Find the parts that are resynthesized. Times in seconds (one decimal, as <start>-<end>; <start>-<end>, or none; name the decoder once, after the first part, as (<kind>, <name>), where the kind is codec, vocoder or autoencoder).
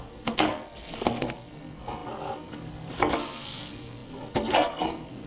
0.0-5.3 (codec, SNAC)